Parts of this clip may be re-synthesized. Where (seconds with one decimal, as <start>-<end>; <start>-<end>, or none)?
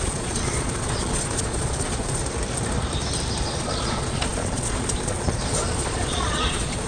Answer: 0.0-2.2; 3.4-6.9